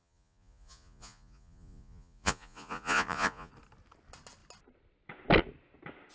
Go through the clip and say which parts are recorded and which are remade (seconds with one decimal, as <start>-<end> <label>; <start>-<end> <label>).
0.0-3.5 remade; 3.5-6.1 recorded

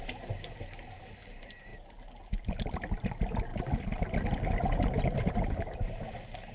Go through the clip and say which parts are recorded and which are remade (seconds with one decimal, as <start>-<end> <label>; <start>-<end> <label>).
0.0-6.5 recorded

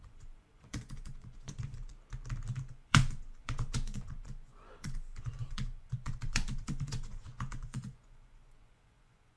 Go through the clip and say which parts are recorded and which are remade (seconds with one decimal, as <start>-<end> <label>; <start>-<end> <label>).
0.0-1.9 remade; 1.9-2.7 recorded; 2.7-9.4 remade

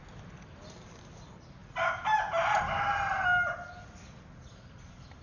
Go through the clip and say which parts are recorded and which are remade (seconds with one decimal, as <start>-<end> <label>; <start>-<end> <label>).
0.0-5.2 recorded

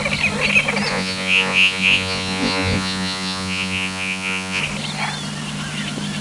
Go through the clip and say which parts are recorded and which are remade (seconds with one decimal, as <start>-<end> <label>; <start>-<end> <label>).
0.0-0.9 recorded; 0.9-4.6 remade; 4.6-6.2 recorded